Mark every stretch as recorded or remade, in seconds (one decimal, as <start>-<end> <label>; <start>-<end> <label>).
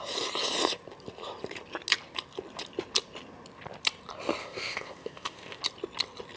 0.0-4.4 recorded; 4.4-5.6 remade; 5.6-6.4 recorded